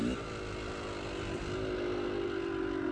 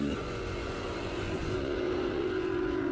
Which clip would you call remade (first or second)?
second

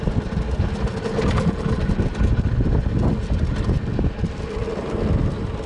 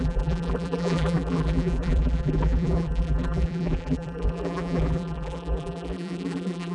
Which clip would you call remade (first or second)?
second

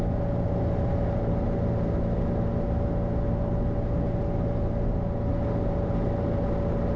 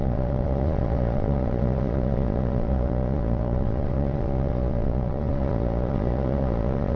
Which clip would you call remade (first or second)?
second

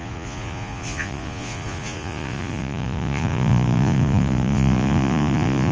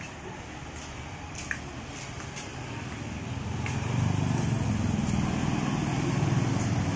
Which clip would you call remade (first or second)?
first